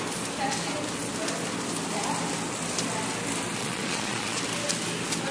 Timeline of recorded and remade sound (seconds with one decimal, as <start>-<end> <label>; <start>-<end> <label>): 0.0-3.6 recorded; 3.6-4.4 remade; 4.4-5.3 recorded